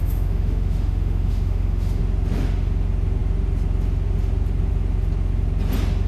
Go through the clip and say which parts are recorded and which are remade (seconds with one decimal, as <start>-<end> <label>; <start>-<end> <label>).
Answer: 0.0-2.0 remade; 2.0-6.1 recorded

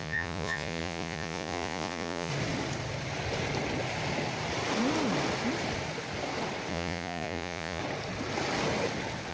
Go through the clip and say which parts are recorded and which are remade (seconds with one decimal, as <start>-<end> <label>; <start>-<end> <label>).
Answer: 0.0-2.3 remade; 2.3-6.7 recorded; 6.7-7.8 remade; 7.8-9.3 recorded

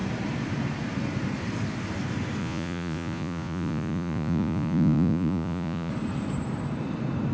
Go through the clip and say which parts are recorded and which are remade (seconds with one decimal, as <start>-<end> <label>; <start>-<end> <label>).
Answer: 0.0-2.4 recorded; 2.4-5.9 remade; 5.9-7.3 recorded

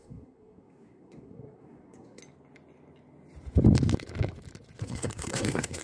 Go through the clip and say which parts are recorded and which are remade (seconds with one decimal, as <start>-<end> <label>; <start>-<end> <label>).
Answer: 0.0-2.2 remade; 2.2-4.8 recorded; 4.8-5.8 remade